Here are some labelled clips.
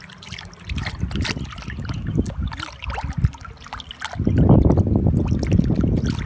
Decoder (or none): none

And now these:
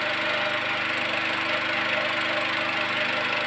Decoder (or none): none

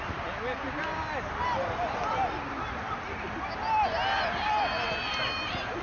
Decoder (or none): none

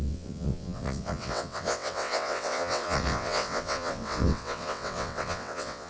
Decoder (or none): vocoder, WaveNeXt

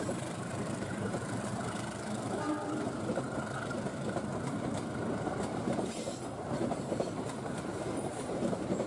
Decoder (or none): vocoder, BigVGAN v2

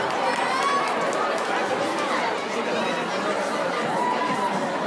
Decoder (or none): none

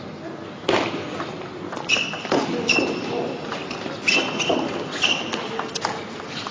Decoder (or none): none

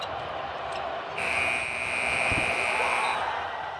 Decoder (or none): vocoder, BigVGAN v2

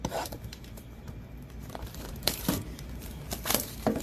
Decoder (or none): vocoder, BigVGAN v2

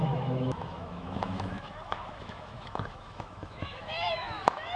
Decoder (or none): autoencoder, DAC-VAE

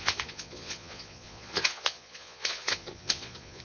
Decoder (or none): vocoder, Vocos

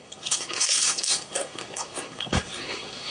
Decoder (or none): codec, SNAC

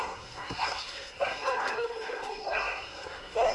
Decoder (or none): codec, SNAC